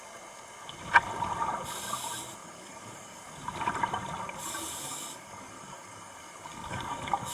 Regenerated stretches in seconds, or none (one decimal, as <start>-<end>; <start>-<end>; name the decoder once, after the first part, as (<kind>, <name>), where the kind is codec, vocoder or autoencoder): 2.4-3.2 (codec, DAC); 4.4-7.3